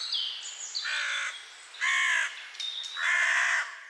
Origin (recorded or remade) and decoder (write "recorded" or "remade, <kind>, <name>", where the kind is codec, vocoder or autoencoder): recorded